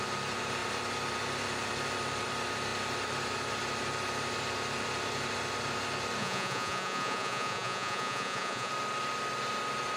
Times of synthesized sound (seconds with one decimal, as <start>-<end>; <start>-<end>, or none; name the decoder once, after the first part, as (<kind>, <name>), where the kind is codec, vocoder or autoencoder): 6.2-8.7 (vocoder, Vocos)